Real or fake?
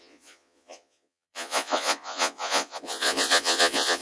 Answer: fake